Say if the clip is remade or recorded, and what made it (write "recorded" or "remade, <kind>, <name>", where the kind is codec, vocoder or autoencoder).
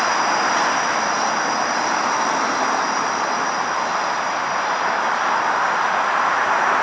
recorded